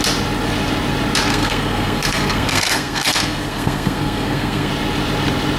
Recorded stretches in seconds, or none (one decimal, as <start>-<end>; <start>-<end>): 0.0-1.3; 4.7-5.6